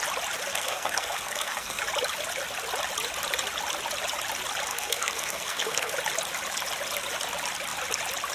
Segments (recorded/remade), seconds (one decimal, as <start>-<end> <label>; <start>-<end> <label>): 0.0-0.5 recorded; 0.5-1.8 remade; 1.8-4.7 recorded; 4.7-5.9 remade; 5.9-8.3 recorded